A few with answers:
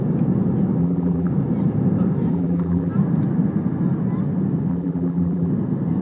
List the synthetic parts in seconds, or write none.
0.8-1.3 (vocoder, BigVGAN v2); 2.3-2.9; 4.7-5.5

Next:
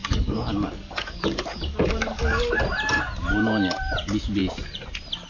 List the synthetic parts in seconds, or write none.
0.0-2.6 (codec, DAC)

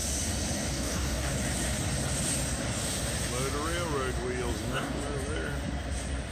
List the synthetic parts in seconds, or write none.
0.7-1.3 (codec, DAC); 4.6-5.0

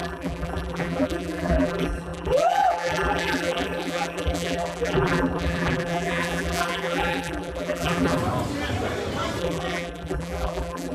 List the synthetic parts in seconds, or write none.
0.0-8.2 (vocoder, BigVGAN v2); 9.4-10.9

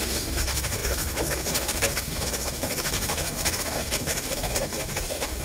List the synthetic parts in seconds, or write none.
0.0-5.4 (codec, DAC)

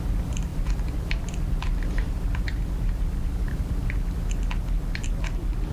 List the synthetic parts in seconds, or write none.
0.5-3.9 (vocoder, BigVGAN v2)